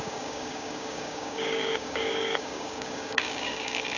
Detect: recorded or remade remade